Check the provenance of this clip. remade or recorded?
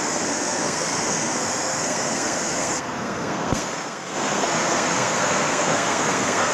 remade